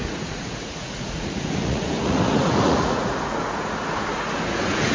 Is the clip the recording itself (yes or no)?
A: no